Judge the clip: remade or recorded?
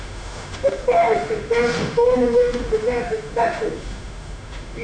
remade